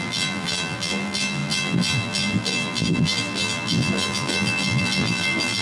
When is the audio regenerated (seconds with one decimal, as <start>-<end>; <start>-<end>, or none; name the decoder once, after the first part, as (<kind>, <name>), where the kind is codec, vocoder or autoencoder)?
0.0-5.6 (vocoder, BigVGAN v2)